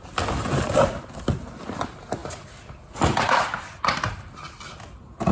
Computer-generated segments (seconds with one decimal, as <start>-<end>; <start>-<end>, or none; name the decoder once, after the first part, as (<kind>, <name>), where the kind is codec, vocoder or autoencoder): none